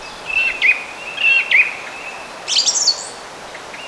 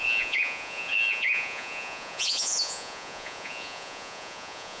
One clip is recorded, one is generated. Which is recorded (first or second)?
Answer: first